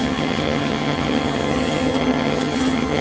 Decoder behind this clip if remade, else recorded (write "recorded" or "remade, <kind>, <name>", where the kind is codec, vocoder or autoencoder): remade, vocoder, HiFi-GAN